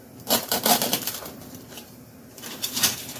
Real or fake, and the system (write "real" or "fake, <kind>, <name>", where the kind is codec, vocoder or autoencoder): fake, vocoder, BigVGAN v2